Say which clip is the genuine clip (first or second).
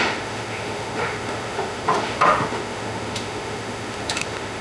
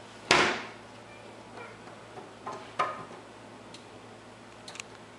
second